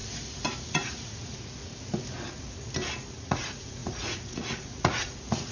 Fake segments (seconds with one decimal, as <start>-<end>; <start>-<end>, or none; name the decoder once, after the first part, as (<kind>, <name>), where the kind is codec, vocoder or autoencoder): 0.6-1.6 (vocoder, Vocos); 3.2-5.5